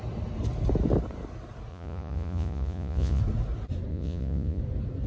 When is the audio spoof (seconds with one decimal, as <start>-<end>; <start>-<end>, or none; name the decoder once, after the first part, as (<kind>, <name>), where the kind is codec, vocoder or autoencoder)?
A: 1.7-3.2 (vocoder, Vocos); 3.9-4.6